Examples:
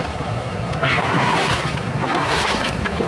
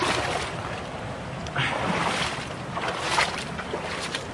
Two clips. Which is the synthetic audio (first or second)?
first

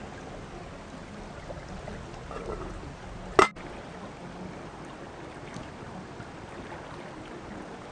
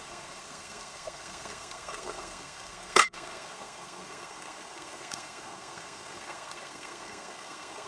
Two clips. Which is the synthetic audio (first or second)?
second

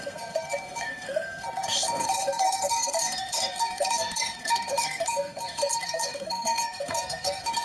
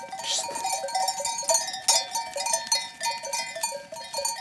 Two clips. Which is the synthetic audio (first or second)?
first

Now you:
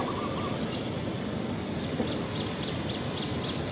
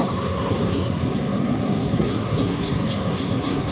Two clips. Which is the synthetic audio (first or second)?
second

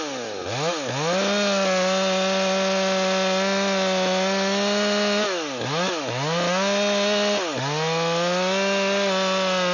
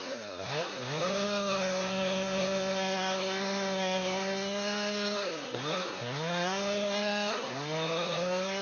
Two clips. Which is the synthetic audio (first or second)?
second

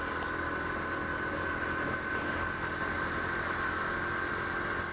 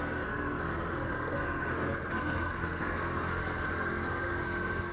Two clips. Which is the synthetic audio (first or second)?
second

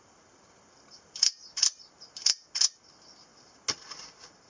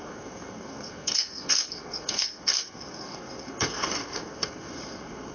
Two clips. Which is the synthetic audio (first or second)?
second